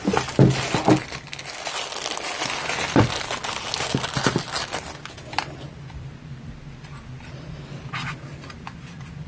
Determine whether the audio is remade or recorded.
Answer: recorded